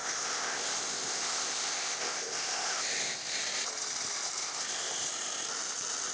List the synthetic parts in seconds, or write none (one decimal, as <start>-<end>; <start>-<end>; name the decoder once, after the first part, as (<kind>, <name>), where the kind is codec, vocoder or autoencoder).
0.0-3.4 (codec, ZipCodec); 4.4-5.1